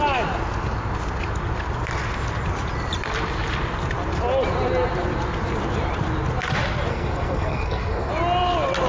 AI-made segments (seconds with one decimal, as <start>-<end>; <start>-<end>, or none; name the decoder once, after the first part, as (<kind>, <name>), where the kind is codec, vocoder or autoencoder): 6.9-8.1 (codec, SNAC)